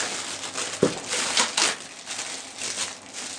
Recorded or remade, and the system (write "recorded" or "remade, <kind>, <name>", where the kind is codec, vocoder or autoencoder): recorded